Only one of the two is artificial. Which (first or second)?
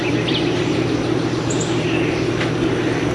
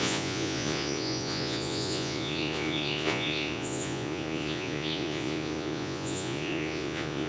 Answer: second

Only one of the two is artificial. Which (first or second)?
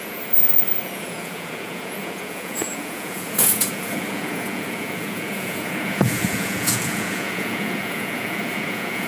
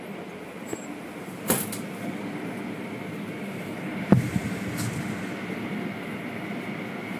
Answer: first